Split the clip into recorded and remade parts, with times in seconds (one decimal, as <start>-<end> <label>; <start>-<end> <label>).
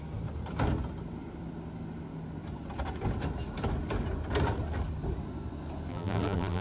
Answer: 0.0-5.9 recorded; 5.9-6.6 remade